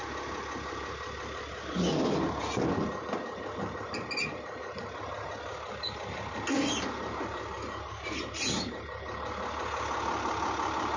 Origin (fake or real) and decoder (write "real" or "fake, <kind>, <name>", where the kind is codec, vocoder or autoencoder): real